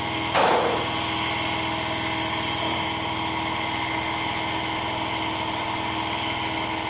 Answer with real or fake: real